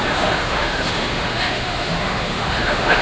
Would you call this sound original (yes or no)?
no